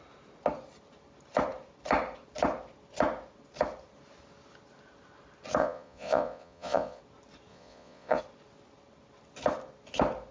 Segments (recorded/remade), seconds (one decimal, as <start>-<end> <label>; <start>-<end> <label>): 0.0-5.6 recorded; 5.6-7.0 remade; 7.0-7.5 recorded; 7.5-8.2 remade; 8.2-10.3 recorded